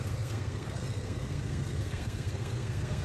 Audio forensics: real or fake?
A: fake